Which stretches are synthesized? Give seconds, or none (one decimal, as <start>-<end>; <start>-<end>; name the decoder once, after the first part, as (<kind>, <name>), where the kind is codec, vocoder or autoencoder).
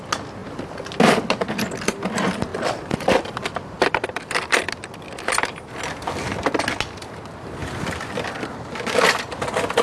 2.5-4.7 (vocoder, BigVGAN v2); 7.6-8.3